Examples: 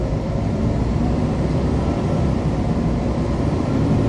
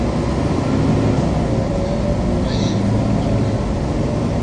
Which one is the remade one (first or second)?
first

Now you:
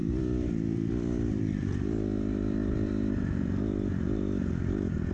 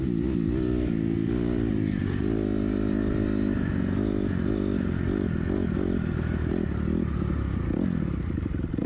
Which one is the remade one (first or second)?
first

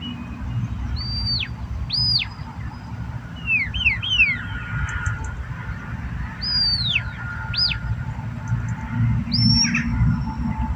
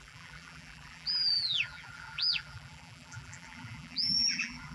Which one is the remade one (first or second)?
second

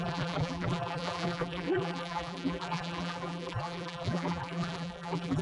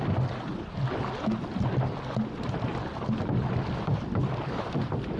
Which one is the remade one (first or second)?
first